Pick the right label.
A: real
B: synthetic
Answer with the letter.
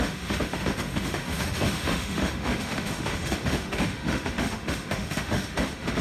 B